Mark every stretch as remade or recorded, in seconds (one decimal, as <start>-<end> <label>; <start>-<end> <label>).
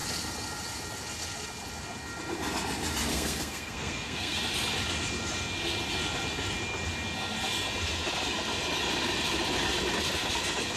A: 0.0-3.1 recorded; 3.1-4.4 remade; 4.4-10.8 recorded